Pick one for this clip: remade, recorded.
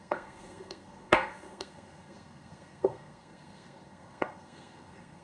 remade